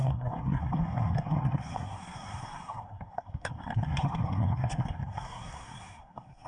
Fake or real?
fake